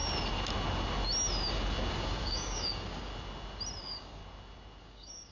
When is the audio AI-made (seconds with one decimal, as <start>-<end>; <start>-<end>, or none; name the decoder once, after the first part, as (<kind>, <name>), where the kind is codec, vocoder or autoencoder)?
1.9-3.1 (codec, DAC); 3.8-4.2; 4.8-5.3